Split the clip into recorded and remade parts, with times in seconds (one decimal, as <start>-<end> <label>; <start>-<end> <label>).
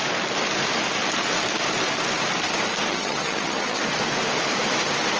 0.0-2.9 recorded; 2.9-3.8 remade; 3.8-5.2 recorded